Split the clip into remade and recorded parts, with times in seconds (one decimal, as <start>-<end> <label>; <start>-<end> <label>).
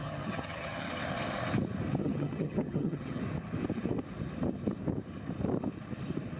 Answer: 0.0-0.9 remade; 0.9-2.0 recorded; 2.0-3.2 remade; 3.2-6.4 recorded